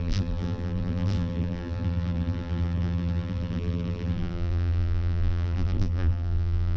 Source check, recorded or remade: remade